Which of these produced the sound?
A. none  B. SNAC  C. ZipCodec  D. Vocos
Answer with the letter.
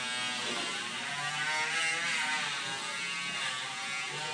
A